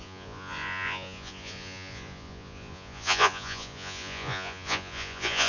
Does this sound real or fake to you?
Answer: fake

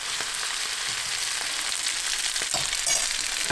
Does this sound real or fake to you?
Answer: real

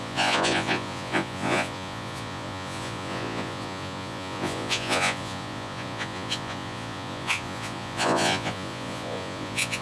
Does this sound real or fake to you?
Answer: fake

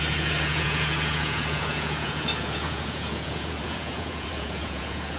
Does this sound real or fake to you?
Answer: fake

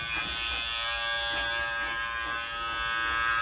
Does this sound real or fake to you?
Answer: real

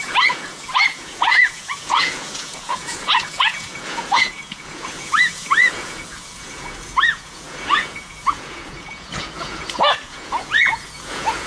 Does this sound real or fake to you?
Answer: fake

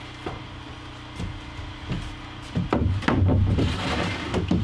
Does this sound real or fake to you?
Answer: real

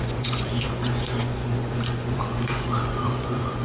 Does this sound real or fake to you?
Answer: fake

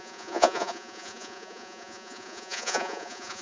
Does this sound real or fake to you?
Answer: fake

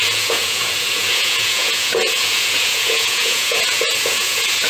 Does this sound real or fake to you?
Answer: fake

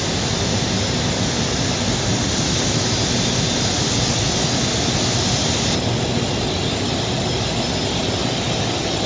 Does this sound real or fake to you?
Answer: real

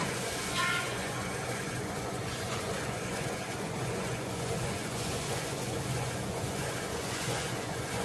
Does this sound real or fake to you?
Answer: fake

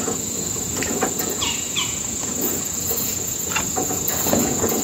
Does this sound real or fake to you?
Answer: fake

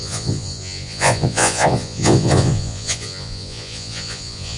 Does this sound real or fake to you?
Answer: fake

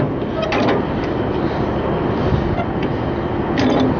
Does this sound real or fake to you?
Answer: real